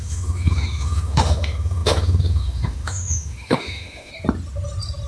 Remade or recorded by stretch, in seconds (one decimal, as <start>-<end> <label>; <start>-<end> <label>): 0.0-4.1 remade; 4.1-5.1 recorded